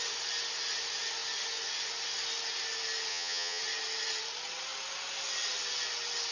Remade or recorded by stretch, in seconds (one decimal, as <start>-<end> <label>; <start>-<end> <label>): 0.0-3.1 recorded; 3.1-3.6 remade; 3.6-6.3 recorded